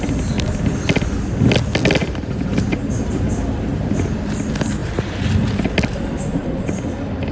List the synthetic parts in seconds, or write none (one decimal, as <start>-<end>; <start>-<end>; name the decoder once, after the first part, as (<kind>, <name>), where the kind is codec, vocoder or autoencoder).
2.0-3.9 (vocoder, BigVGAN v2); 4.8-5.7

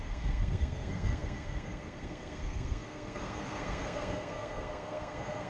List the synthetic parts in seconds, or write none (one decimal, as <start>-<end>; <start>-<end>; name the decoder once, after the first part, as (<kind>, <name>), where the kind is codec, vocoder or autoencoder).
0.0-5.5 (codec, SNAC)

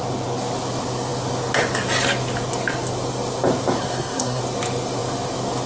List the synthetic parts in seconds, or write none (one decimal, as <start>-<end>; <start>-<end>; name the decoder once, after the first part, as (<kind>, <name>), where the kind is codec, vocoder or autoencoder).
3.8-4.4 (codec, SNAC)

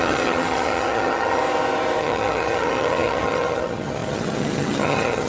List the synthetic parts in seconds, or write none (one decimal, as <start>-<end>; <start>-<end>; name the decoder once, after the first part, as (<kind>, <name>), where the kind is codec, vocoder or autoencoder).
0.0-1.4 (vocoder, HiFi-GAN); 2.0-5.3